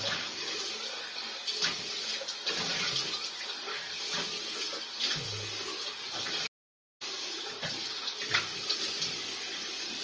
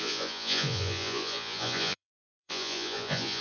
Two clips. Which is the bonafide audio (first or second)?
first